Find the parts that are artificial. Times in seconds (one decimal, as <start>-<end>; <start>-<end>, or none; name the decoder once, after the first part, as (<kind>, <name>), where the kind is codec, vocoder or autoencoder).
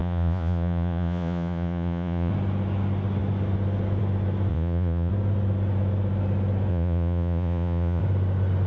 0.0-2.3 (vocoder, Vocos); 4.5-5.1; 6.7-8.0